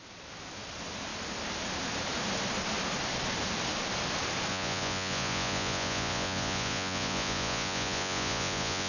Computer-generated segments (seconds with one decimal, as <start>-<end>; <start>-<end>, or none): 4.5-8.9